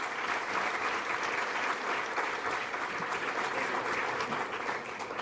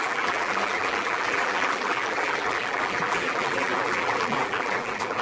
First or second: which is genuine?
first